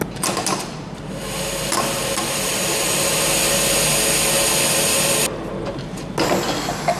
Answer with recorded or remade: recorded